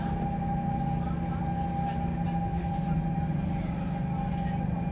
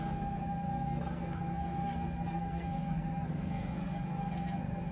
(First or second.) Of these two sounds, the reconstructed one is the second